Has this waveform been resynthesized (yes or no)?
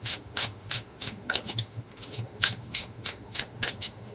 yes